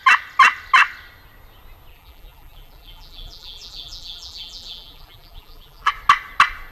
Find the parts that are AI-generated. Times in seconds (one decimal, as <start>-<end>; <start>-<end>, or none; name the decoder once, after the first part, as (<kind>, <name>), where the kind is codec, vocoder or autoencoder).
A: 1.9-5.9 (vocoder, BigVGAN v2)